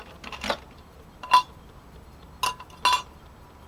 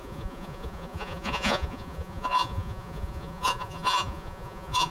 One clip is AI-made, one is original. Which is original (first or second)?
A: first